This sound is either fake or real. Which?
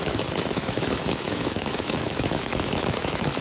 fake